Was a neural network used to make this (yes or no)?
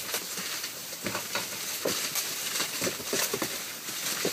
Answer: yes